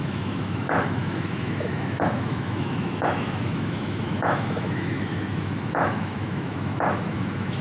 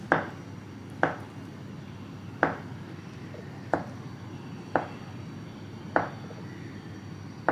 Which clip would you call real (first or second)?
second